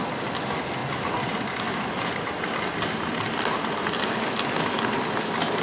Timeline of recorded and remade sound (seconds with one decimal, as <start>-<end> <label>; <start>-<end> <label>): 0.0-5.6 recorded